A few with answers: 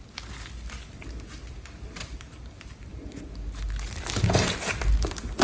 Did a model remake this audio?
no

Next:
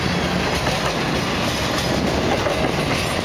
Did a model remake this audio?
no